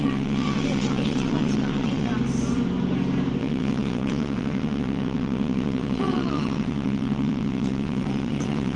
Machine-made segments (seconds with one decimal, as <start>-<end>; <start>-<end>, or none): 0.0-2.1; 3.4-8.8